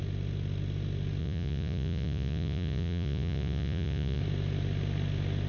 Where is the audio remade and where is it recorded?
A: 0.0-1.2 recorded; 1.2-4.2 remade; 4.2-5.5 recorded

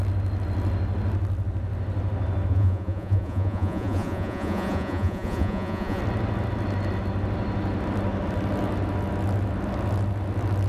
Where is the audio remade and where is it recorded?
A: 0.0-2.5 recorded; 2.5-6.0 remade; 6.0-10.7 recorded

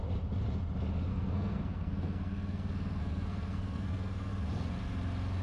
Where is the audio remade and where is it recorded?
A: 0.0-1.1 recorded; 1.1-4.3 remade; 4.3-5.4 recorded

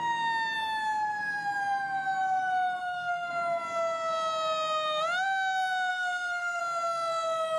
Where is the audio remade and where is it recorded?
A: 0.0-2.8 recorded; 2.8-3.3 remade; 3.3-5.9 recorded; 5.9-6.6 remade; 6.6-7.6 recorded

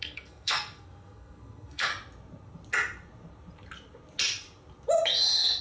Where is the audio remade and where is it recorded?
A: 0.0-1.9 remade; 1.9-5.6 recorded

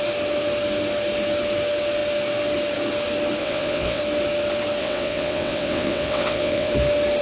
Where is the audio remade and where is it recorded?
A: 0.0-3.4 recorded; 3.4-4.0 remade; 4.0-4.8 recorded; 4.8-6.7 remade; 6.7-7.2 recorded

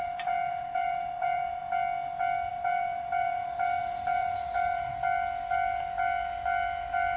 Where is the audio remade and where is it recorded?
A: 0.0-1.6 remade; 1.6-2.5 recorded; 2.5-4.9 remade; 4.9-7.2 recorded